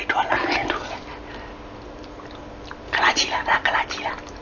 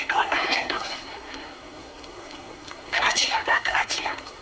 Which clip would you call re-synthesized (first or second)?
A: second